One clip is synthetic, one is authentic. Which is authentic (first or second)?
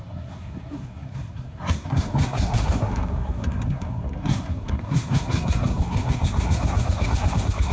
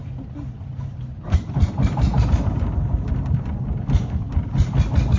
second